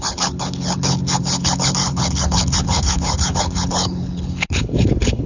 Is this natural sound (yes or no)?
no